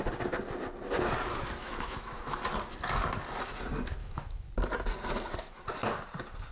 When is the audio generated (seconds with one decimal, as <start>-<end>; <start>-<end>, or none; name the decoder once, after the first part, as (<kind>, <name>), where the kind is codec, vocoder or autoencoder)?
1.6-2.4 (autoencoder, DAC-VAE); 4.0-4.5